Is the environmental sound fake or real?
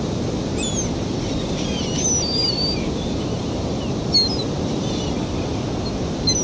real